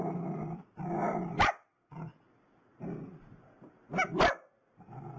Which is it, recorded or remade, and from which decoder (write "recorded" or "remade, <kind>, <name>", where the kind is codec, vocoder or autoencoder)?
recorded